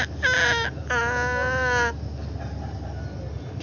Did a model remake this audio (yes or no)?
no